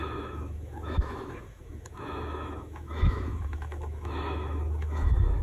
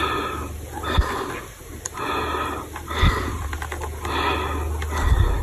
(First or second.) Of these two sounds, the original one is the second